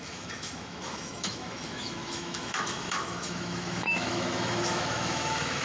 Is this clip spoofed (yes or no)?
yes